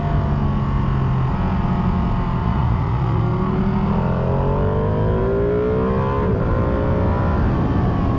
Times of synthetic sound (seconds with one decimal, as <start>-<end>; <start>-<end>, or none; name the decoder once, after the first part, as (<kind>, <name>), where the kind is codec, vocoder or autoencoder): 2.4-3.2 (vocoder, Vocos)